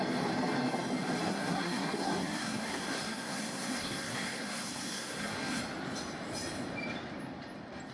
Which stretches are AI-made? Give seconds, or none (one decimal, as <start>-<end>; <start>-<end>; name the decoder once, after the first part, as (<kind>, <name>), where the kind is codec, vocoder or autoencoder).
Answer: 1.3-5.6 (codec, SNAC)